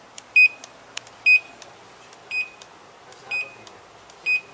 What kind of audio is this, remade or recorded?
recorded